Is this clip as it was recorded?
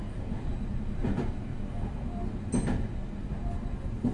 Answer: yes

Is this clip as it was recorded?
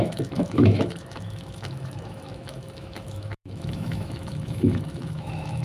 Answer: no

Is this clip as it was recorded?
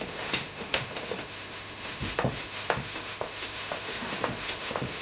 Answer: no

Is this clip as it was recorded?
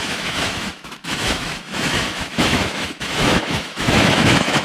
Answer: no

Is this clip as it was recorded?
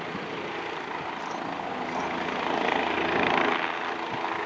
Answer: yes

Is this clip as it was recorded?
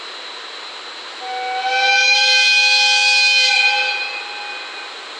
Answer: yes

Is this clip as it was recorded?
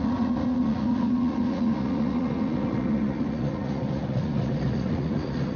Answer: no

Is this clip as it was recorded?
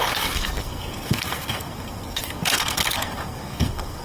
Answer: no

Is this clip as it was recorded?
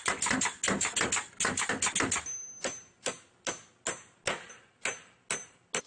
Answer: yes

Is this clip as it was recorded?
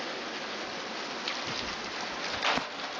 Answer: yes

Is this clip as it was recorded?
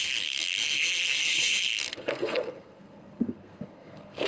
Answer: no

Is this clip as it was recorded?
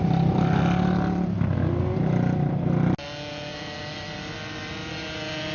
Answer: yes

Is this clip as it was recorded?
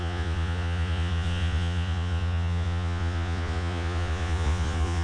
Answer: no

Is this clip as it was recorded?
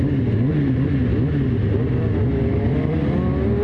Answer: yes